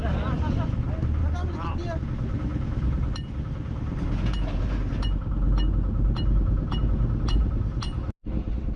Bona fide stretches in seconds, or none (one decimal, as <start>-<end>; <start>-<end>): 0.0-8.8